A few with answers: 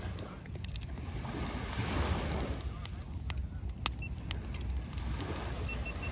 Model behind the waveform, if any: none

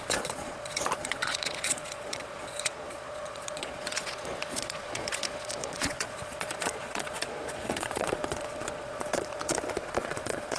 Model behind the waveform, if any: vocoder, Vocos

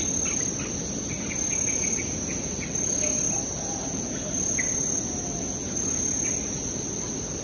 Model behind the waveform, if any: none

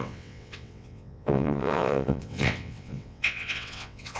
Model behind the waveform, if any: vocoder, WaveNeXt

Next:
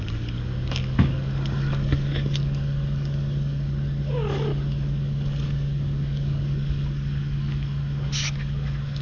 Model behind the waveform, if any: codec, DAC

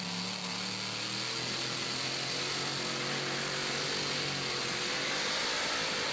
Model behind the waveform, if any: none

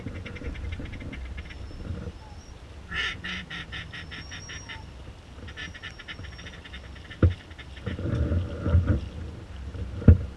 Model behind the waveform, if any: none